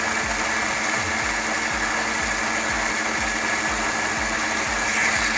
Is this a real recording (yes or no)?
yes